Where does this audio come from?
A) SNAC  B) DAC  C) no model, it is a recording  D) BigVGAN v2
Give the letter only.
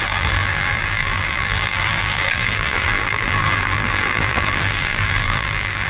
D